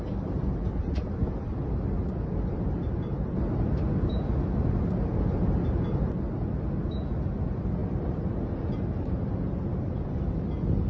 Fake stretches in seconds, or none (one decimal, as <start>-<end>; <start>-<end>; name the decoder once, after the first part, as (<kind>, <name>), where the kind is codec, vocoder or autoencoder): none